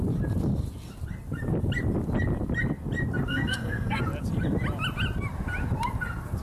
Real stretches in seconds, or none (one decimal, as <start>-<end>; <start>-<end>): 0.0-3.3; 4.0-6.4